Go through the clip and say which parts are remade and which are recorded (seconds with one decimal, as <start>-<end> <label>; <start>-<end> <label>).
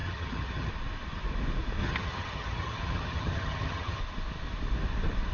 0.0-0.7 remade; 0.7-1.8 recorded; 1.8-4.0 remade; 4.0-5.3 recorded